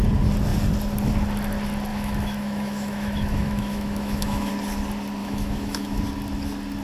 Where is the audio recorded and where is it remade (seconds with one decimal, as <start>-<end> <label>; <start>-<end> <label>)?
0.0-1.9 recorded; 1.9-4.5 remade; 4.5-5.2 recorded; 5.2-6.0 remade; 6.0-6.8 recorded